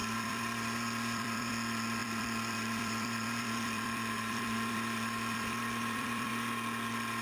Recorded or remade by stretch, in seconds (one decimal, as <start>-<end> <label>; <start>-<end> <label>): 0.0-1.5 remade; 1.5-2.0 recorded; 2.0-6.3 remade; 6.3-7.2 recorded